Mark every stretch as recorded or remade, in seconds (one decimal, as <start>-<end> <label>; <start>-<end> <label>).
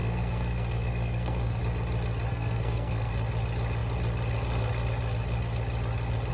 0.0-1.6 remade; 1.6-2.3 recorded; 2.3-3.1 remade; 3.1-6.3 recorded